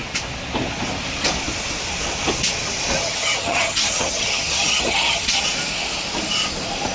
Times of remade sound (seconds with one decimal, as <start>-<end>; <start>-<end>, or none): 3.0-5.4